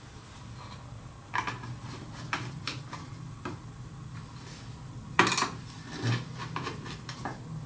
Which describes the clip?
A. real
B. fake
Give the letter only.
A